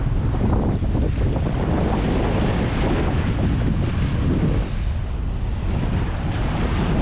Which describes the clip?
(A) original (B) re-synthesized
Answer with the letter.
A